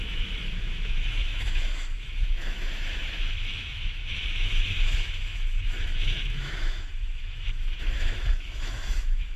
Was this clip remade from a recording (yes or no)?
yes